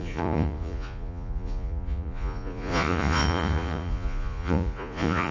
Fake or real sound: fake